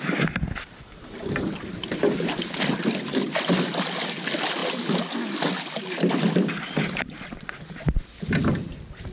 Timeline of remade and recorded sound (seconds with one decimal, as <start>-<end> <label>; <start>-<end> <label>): 0.0-9.1 recorded

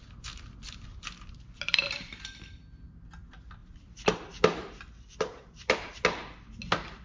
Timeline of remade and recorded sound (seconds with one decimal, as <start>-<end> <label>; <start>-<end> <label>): 0.0-0.9 recorded; 0.9-2.6 remade; 2.6-3.6 recorded; 3.6-5.9 remade; 5.9-7.0 recorded

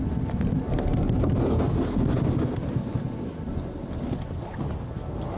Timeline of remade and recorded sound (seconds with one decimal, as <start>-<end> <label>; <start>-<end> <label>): 0.0-5.4 recorded

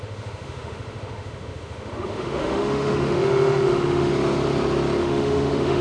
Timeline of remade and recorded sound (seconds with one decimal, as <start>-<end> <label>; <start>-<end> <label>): 0.0-4.1 remade; 4.1-5.0 recorded; 5.0-5.8 remade